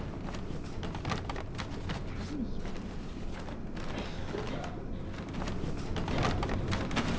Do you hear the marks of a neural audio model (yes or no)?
no